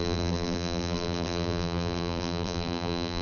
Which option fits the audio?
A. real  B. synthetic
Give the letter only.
B